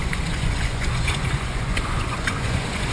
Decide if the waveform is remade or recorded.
remade